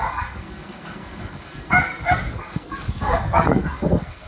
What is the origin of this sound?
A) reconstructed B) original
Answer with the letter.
A